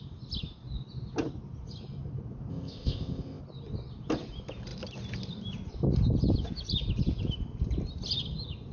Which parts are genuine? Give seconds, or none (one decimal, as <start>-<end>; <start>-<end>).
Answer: 0.0-2.5; 3.4-8.7